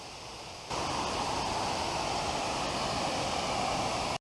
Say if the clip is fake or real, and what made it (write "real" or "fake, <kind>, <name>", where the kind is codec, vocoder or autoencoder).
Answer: real